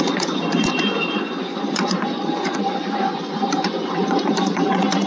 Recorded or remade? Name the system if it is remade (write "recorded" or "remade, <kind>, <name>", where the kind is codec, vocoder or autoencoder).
remade, vocoder, Vocos